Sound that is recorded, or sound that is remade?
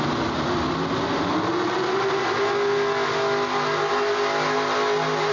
recorded